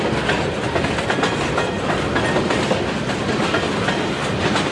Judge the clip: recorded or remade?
recorded